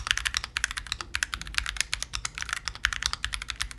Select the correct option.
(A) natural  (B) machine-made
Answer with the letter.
A